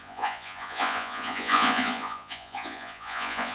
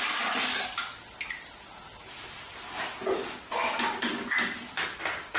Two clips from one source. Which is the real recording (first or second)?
second